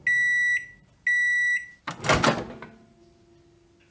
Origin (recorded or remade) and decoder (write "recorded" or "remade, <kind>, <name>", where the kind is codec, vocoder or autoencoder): recorded